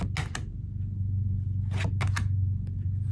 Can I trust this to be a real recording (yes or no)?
yes